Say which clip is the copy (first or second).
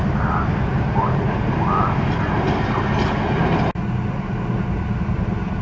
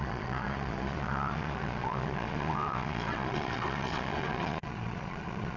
second